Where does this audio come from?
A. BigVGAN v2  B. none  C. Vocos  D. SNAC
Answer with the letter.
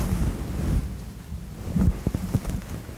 B